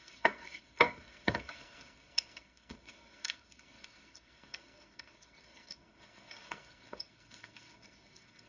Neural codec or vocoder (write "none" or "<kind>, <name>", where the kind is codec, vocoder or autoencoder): codec, SNAC